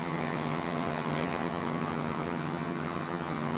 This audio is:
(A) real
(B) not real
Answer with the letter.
B